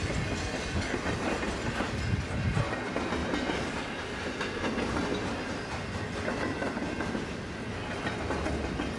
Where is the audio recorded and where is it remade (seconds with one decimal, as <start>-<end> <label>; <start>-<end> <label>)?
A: 0.0-3.2 recorded; 3.2-4.9 remade; 4.9-9.0 recorded